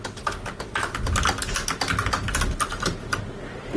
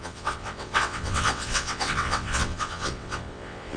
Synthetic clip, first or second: second